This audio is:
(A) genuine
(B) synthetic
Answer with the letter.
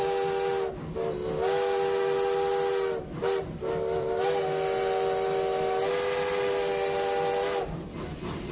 A